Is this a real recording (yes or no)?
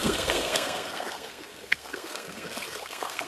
no